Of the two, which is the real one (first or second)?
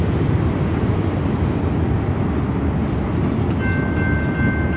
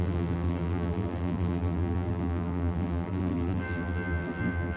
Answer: first